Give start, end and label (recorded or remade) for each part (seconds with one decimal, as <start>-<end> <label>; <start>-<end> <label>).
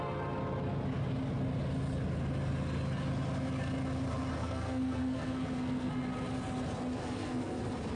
0.0-4.4 recorded; 4.4-5.9 remade; 5.9-7.0 recorded; 7.0-7.6 remade; 7.6-8.0 recorded